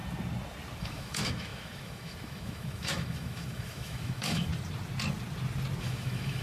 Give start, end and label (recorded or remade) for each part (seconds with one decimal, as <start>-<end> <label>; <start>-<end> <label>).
0.0-0.8 recorded; 0.8-4.5 remade; 4.5-5.8 recorded; 5.8-6.4 remade